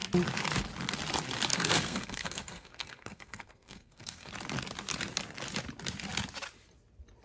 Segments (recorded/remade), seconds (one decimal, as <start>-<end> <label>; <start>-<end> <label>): 0.0-1.5 recorded; 1.5-4.3 remade; 4.3-7.2 recorded